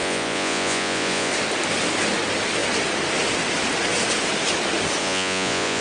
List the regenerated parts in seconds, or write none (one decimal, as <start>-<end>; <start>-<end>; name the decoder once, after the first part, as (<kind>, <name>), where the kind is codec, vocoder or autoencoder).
0.0-1.3 (vocoder, Vocos); 5.0-5.8